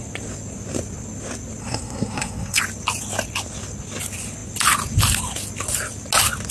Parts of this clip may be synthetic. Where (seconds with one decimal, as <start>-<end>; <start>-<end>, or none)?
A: 1.6-2.6